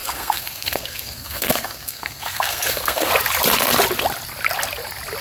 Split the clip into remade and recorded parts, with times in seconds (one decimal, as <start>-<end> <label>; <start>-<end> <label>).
0.0-3.1 remade; 3.1-5.2 recorded